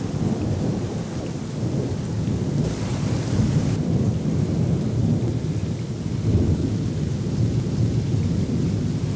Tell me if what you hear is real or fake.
real